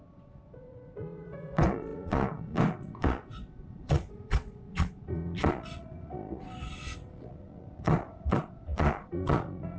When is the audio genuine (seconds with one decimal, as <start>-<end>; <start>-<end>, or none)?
none